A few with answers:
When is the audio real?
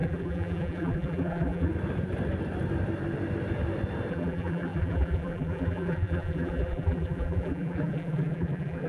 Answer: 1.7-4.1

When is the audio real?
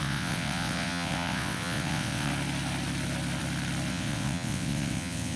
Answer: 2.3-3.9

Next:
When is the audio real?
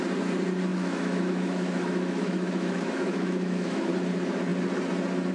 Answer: 0.0-0.7; 3.9-5.3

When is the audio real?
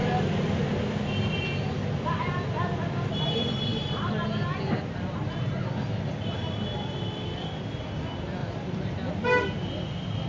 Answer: 0.0-8.4; 9.1-10.3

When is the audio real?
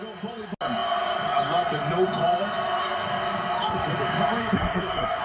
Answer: 0.0-4.4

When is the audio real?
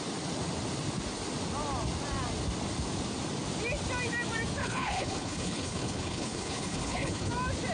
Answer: 0.0-4.6; 7.3-7.7